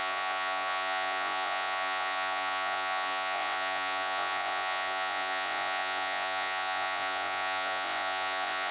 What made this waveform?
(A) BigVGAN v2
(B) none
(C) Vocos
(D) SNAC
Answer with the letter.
C